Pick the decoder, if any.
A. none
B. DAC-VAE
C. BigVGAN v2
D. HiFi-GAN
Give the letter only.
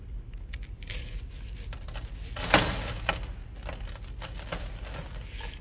A